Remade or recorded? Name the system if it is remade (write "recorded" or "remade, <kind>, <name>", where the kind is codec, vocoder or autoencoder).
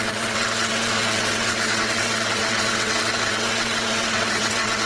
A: remade, vocoder, WaveNeXt